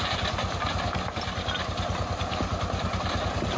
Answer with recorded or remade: recorded